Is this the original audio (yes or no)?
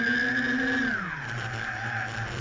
yes